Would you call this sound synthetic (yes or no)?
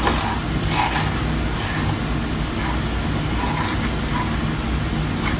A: no